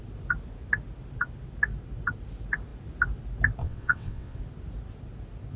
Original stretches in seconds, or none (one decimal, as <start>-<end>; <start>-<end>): 0.0-3.6; 4.4-5.6